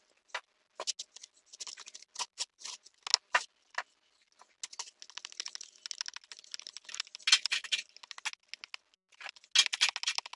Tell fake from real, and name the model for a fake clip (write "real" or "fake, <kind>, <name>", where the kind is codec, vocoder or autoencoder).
real